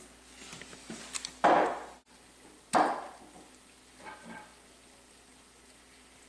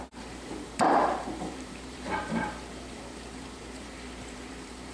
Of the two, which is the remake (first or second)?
second